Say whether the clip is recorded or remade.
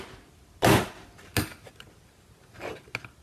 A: recorded